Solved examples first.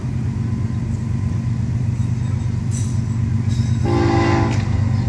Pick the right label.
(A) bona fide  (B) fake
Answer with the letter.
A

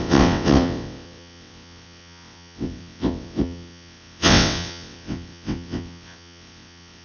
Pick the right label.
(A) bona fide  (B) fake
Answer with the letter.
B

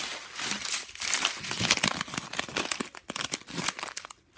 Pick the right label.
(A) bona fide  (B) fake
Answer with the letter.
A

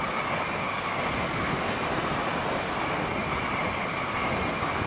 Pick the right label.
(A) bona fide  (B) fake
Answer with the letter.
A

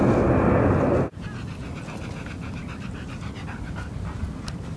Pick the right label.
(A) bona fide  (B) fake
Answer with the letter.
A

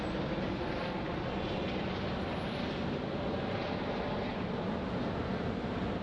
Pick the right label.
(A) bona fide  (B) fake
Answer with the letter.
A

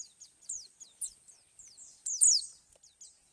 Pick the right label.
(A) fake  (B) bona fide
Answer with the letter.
B